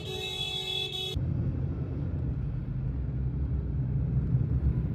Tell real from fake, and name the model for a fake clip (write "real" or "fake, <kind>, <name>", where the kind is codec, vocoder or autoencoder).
real